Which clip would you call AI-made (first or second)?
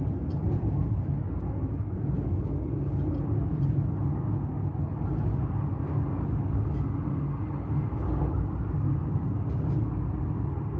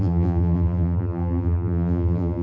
second